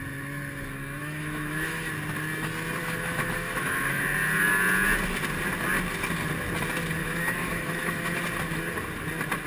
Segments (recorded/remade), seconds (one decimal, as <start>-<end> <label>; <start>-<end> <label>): 0.0-1.0 recorded; 1.0-1.9 remade; 1.9-2.8 recorded; 2.8-4.0 remade; 4.0-7.0 recorded; 7.0-8.2 remade; 8.2-9.5 recorded